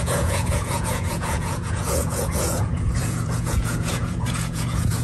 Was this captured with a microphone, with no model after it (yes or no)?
no